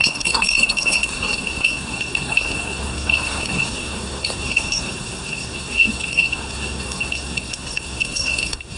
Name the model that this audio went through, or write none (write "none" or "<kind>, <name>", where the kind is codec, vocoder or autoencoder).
codec, SNAC